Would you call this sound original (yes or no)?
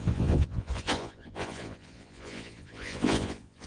no